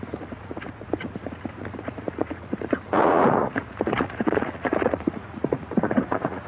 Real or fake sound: fake